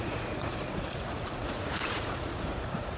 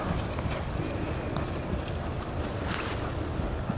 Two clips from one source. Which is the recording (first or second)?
second